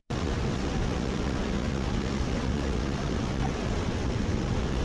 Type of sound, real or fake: fake